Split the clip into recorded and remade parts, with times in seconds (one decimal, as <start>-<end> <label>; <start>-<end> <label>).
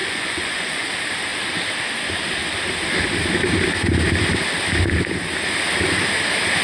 0.0-0.9 remade; 0.9-6.6 recorded